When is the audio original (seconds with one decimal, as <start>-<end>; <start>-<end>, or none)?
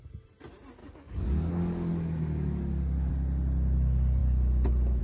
0.0-0.8; 3.1-5.0